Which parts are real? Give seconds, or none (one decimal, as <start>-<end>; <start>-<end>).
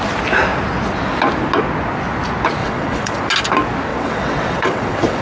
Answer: 0.0-2.6; 3.2-3.9